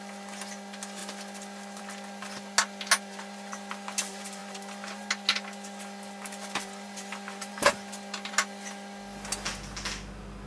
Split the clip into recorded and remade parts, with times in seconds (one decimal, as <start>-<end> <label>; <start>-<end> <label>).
0.0-10.5 recorded